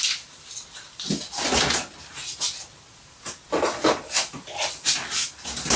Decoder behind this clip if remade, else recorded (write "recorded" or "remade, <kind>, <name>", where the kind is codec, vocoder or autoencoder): recorded